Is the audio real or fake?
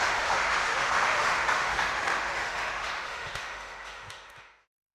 fake